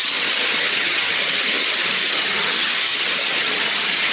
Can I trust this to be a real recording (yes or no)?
no